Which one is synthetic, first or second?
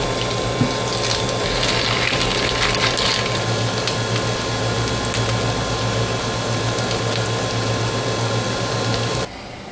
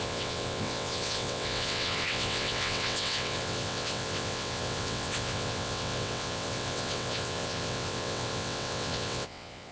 second